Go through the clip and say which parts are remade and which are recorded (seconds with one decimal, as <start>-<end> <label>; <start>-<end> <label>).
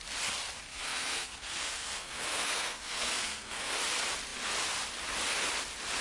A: 0.0-0.7 recorded; 0.7-3.7 remade; 3.7-6.0 recorded